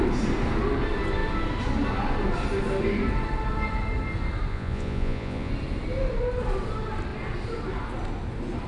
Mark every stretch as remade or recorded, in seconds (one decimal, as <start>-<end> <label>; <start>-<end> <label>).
0.0-4.5 recorded; 4.5-5.5 remade; 5.5-8.7 recorded